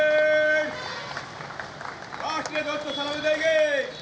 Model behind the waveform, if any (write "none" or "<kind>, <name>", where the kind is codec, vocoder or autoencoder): none